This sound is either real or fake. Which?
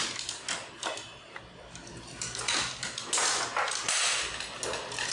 real